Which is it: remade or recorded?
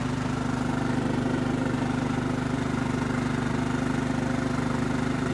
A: recorded